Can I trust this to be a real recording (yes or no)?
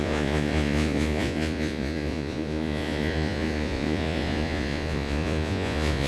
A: no